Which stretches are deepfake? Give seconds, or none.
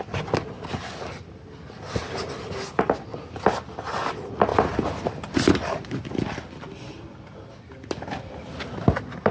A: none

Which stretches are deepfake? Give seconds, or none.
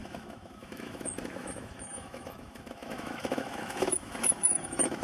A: 0.0-5.0 (autoencoder, DAC-VAE)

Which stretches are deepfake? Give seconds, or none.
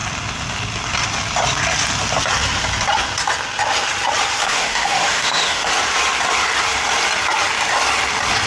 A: 4.4-5.7 (autoencoder, DAC-VAE)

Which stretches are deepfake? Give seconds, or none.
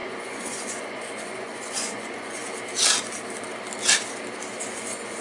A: 0.0-2.4 (vocoder, Vocos); 4.7-5.2